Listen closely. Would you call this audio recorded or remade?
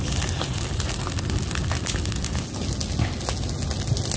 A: recorded